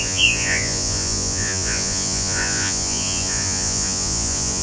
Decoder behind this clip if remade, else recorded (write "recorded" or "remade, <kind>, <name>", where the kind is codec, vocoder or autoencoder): remade, vocoder, Vocos